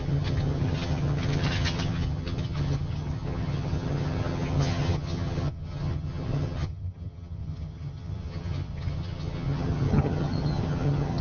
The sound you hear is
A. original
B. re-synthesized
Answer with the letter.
B